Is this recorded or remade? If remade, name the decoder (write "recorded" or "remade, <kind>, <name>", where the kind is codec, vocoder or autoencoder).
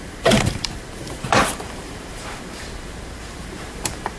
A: remade, vocoder, BigVGAN v2